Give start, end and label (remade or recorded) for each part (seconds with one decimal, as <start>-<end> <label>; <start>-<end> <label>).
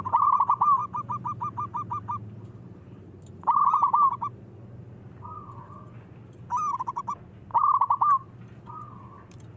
0.0-9.6 recorded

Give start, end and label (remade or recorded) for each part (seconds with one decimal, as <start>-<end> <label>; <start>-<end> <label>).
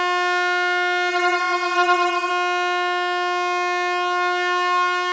0.0-1.1 recorded; 1.1-2.3 remade; 2.3-5.1 recorded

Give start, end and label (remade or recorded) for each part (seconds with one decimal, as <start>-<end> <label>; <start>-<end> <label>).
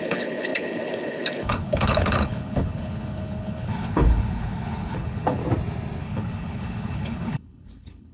0.0-5.4 remade; 5.4-6.0 recorded; 6.0-8.1 remade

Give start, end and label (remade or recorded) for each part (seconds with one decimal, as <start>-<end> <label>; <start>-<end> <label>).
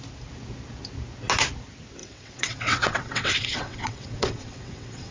0.0-2.0 recorded; 2.0-5.1 remade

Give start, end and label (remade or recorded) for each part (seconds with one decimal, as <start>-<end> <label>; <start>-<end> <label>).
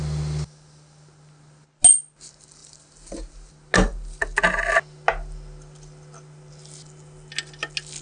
0.0-8.0 recorded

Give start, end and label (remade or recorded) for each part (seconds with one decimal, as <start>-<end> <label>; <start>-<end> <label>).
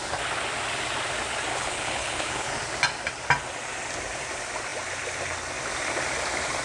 0.0-1.5 recorded; 1.5-2.5 remade; 2.5-6.6 recorded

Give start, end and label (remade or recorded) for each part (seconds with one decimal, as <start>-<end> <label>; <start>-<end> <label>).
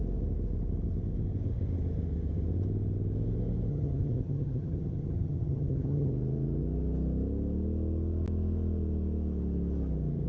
0.0-3.7 recorded; 3.7-6.1 remade; 6.1-10.3 recorded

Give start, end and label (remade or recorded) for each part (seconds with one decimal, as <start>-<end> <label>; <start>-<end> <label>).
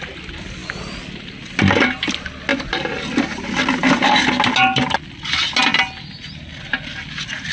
0.0-7.5 recorded